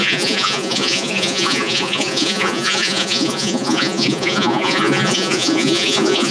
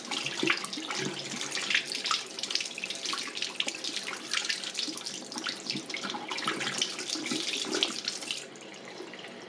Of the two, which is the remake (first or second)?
first